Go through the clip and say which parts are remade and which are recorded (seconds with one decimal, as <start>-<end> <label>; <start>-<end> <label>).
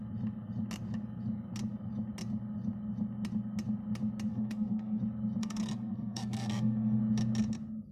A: 0.0-4.3 recorded; 4.3-5.0 remade; 5.0-5.4 recorded; 5.4-7.0 remade; 7.0-7.9 recorded